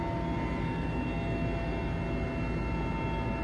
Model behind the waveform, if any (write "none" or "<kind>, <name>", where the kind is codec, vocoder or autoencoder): none